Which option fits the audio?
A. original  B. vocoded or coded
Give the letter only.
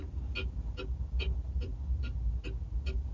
A